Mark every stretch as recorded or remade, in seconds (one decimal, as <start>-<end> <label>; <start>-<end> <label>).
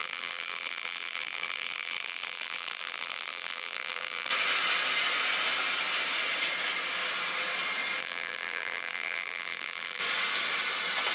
0.0-4.3 remade; 4.3-8.0 recorded; 8.0-10.0 remade; 10.0-11.1 recorded